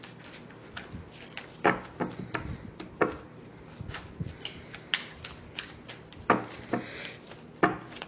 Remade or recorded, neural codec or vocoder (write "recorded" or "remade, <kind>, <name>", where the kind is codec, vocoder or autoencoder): recorded